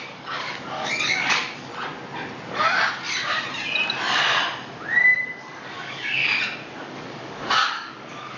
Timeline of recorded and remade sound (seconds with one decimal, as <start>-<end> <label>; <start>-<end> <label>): 0.0-1.7 remade; 1.7-5.0 recorded; 5.0-6.2 remade; 6.2-6.8 recorded; 6.8-8.4 remade

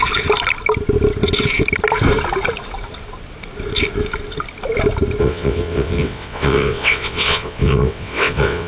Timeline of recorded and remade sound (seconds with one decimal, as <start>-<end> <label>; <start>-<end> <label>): 0.0-5.2 recorded; 5.2-8.7 remade

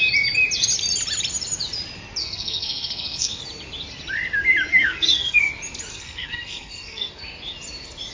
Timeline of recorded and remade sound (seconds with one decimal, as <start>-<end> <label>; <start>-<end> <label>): 0.0-2.2 recorded; 2.2-3.4 remade; 3.4-4.7 recorded; 4.7-5.5 remade; 5.5-5.9 recorded; 5.9-7.2 remade; 7.2-8.1 recorded

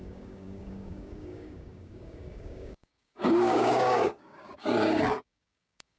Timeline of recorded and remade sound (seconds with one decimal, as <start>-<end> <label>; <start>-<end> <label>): 0.0-6.0 remade

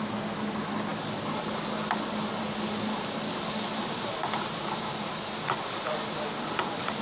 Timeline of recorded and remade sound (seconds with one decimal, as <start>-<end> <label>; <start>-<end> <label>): 0.0-7.0 recorded